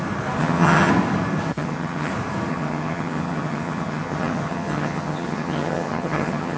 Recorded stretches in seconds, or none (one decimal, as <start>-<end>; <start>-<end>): 0.0-0.4; 0.9-1.5; 2.1-2.5